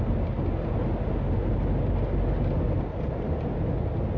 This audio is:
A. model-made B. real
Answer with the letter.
B